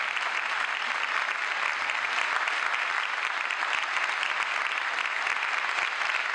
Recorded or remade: recorded